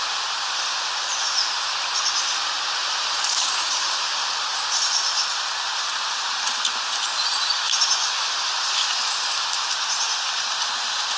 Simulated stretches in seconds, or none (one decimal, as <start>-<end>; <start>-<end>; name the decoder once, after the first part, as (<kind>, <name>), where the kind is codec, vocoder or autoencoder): 2.8-3.8 (vocoder, BigVGAN v2); 4.5-5.5